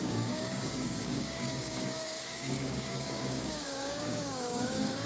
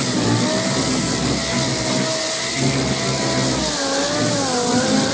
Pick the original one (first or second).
second